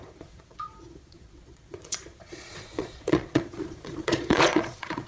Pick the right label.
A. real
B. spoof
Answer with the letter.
B